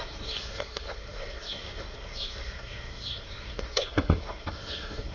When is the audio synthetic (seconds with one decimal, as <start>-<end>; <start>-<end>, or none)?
0.0-5.1